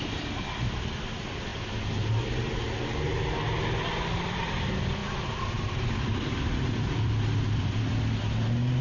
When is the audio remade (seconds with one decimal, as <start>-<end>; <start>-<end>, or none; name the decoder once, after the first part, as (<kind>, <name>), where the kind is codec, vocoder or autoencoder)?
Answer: 0.0-1.5 (vocoder, BigVGAN v2); 4.2-5.0; 5.9-8.8